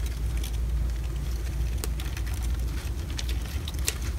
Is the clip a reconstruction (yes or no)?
no